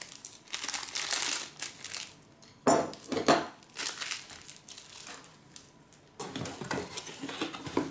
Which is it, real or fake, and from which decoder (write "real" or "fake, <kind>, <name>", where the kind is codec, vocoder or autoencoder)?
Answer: real